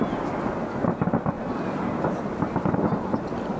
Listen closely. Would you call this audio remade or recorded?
recorded